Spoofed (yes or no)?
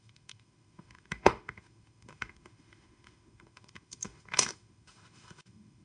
yes